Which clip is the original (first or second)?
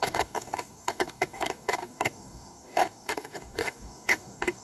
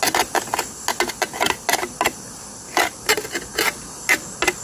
second